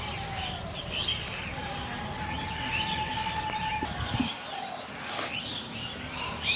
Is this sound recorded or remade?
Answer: recorded